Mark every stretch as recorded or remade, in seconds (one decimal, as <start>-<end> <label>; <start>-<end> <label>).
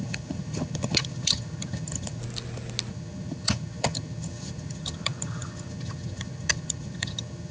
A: 0.0-2.2 remade; 2.2-2.9 recorded; 2.9-7.5 remade